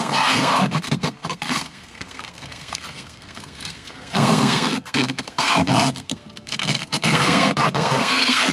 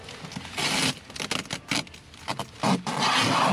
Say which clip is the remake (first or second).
first